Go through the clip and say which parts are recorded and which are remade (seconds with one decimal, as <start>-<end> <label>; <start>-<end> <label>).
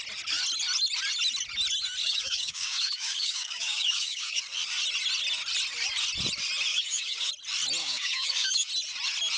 0.0-2.0 recorded; 2.0-4.4 remade; 4.4-6.7 recorded; 6.7-7.3 remade; 7.3-7.8 recorded; 7.8-8.7 remade; 8.7-9.4 recorded